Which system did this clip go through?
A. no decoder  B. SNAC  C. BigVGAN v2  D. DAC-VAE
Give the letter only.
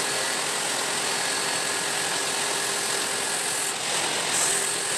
A